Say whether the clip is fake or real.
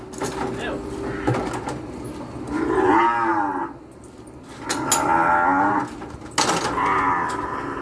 real